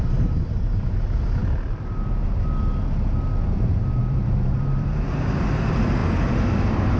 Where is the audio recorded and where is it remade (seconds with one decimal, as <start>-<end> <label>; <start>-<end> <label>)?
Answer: 0.0-4.0 recorded; 4.0-5.6 remade; 5.6-7.0 recorded